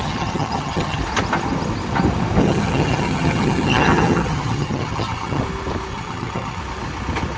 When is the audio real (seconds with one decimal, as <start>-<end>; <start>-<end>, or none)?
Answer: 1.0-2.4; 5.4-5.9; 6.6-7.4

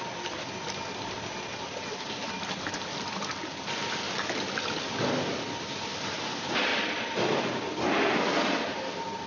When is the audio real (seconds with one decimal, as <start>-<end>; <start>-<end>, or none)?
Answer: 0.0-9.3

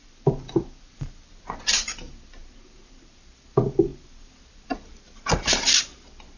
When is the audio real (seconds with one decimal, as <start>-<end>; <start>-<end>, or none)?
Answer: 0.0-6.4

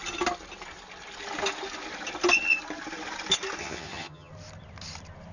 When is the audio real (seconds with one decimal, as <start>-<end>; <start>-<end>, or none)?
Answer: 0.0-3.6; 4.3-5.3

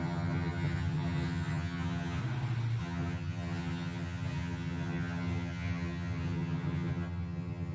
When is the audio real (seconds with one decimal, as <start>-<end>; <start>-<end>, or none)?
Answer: 2.2-2.8

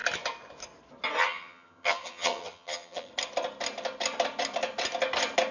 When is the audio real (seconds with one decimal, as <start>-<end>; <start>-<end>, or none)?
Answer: 0.0-1.2; 3.1-5.5